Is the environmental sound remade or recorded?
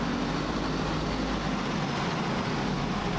recorded